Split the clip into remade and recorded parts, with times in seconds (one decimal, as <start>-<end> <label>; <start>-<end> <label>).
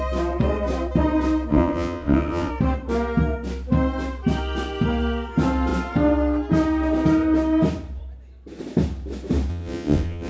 0.0-1.5 recorded; 1.5-2.5 remade; 2.5-9.5 recorded; 9.5-10.3 remade